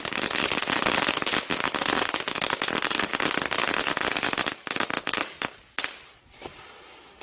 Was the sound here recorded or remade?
recorded